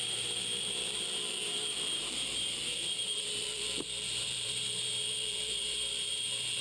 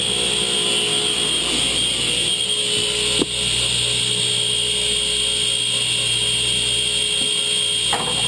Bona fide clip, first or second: second